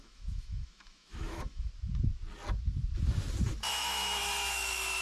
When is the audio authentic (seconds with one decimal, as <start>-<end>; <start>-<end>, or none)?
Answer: 1.7-3.7